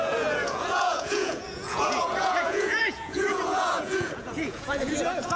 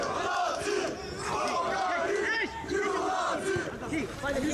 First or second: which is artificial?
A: first